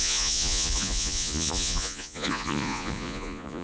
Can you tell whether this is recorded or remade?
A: remade